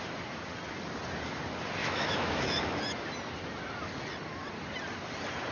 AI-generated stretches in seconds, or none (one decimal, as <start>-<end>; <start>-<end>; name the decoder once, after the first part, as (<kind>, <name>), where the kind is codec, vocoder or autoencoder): 1.8-2.8 (autoencoder, DAC-VAE)